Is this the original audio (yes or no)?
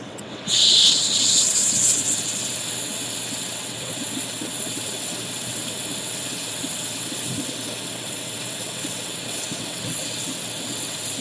no